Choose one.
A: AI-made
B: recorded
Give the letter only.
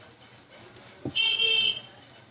B